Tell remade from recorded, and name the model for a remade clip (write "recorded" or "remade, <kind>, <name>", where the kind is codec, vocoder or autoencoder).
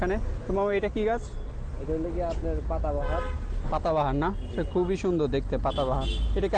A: recorded